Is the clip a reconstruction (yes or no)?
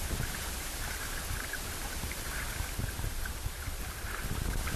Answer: no